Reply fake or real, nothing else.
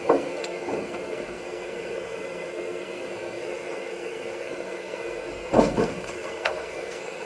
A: fake